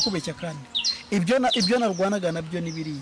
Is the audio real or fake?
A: real